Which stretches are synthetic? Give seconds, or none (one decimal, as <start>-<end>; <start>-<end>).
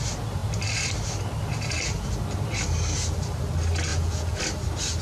3.9-4.4